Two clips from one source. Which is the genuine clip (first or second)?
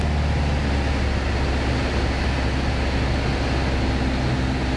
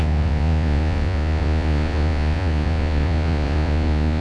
first